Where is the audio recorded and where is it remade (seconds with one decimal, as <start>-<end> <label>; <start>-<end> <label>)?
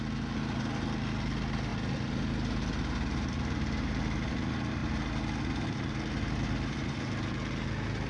0.0-8.1 recorded